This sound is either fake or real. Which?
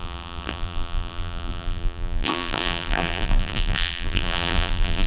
fake